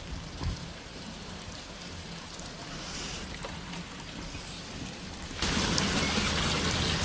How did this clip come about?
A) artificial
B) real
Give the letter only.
B